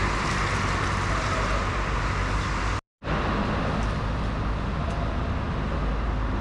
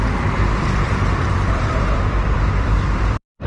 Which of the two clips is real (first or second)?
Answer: first